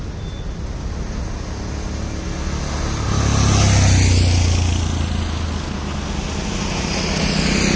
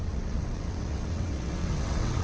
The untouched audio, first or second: first